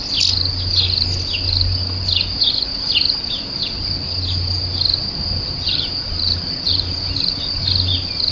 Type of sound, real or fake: real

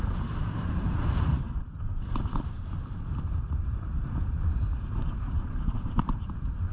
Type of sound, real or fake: fake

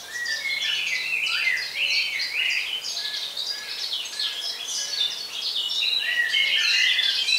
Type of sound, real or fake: real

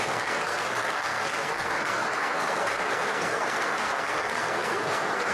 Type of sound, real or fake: fake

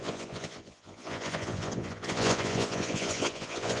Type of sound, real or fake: fake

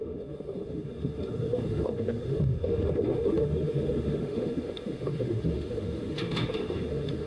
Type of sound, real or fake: fake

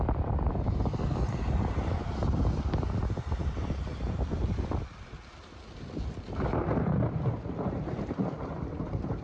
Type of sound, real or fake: fake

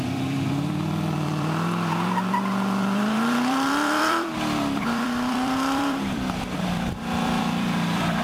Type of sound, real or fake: fake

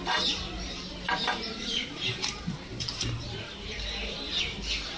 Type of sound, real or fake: fake